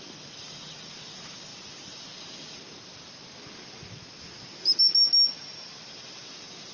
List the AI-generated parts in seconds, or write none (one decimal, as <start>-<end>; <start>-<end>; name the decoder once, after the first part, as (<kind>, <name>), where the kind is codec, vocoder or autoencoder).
none